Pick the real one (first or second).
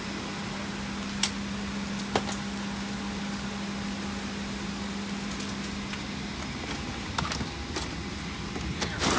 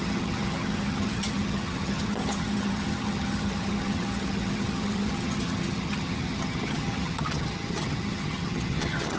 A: first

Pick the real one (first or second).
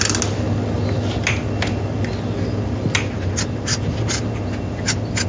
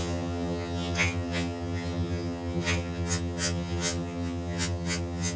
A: first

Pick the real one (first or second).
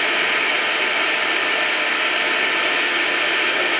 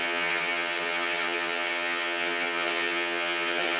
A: first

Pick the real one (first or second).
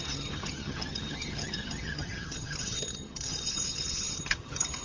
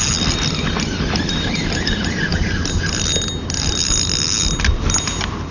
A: second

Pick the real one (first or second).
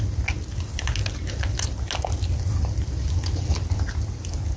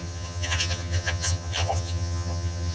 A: first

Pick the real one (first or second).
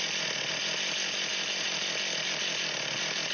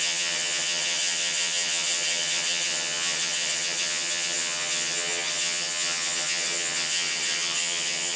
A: first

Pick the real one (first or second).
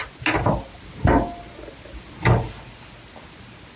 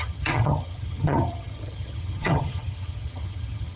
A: first